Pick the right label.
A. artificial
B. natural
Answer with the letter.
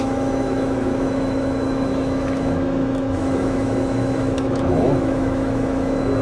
A